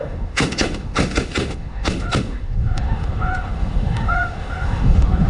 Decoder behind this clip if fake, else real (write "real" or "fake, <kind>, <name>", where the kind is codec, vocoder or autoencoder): fake, autoencoder, DAC-VAE